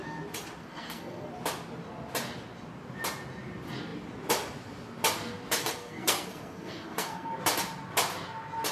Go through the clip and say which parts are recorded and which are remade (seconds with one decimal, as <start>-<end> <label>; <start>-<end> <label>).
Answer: 0.0-0.6 recorded; 0.6-1.3 remade; 1.3-5.6 recorded; 5.6-7.3 remade; 7.3-8.7 recorded